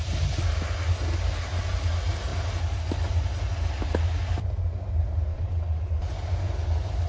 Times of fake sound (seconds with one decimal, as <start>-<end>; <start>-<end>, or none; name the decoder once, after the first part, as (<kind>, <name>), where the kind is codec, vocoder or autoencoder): 5.3-6.0 (vocoder, WaveNeXt)